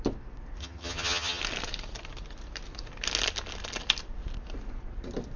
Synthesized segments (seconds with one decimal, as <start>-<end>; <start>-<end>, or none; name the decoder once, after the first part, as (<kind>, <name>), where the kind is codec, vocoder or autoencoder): 0.6-1.4 (vocoder, HiFi-GAN)